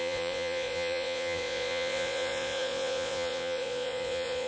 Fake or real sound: fake